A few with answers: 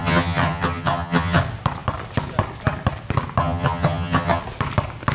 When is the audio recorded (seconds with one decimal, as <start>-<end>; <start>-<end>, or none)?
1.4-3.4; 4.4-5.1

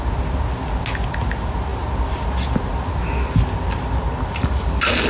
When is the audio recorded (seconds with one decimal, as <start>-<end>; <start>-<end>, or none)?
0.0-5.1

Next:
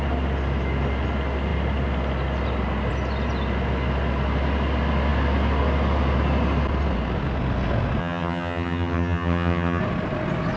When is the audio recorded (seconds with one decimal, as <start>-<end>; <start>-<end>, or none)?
0.0-8.0; 9.8-10.6

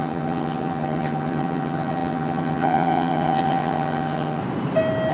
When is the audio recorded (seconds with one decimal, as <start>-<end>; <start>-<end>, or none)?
4.4-5.1

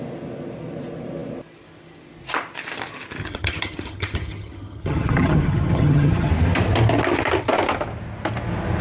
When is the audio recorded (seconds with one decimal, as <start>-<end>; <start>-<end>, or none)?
0.0-3.2; 6.3-8.8

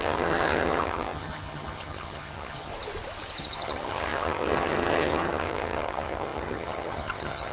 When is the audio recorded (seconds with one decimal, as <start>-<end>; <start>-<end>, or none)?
2.7-3.4